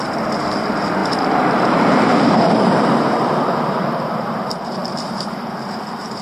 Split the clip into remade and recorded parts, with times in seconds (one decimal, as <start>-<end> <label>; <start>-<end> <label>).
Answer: 0.0-6.2 remade